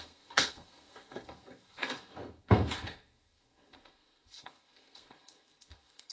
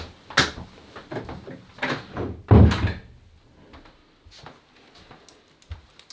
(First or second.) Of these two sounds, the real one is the second